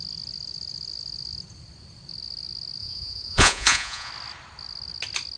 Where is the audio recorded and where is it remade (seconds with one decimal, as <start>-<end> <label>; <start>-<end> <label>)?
0.0-2.8 recorded; 2.8-4.1 remade; 4.1-5.4 recorded